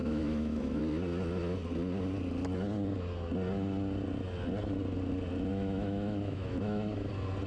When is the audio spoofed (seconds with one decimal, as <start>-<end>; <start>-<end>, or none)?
0.0-0.8; 5.5-7.1